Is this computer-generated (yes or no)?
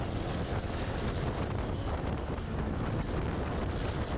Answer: no